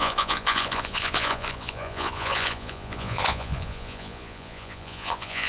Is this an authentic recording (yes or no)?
no